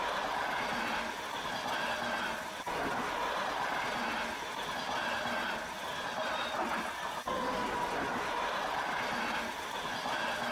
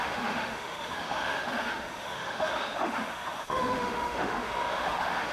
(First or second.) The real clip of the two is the first